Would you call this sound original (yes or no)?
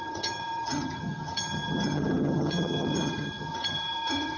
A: no